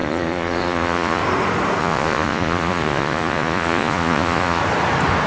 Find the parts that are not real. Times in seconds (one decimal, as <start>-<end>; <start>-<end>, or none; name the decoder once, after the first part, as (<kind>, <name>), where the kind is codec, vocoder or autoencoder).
0.0-1.2 (vocoder, Vocos); 1.8-4.6

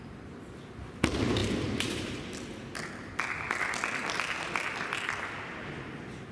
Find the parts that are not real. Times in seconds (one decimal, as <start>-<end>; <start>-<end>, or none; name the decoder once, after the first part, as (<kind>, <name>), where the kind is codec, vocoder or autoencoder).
none

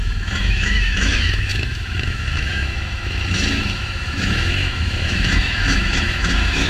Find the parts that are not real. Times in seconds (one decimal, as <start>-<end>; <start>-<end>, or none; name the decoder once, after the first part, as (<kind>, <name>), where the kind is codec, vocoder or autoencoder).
0.0-6.7 (autoencoder, DAC-VAE)